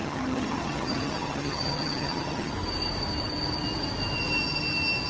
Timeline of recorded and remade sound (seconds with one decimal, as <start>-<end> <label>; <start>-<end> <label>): 0.0-2.5 remade; 2.5-5.1 recorded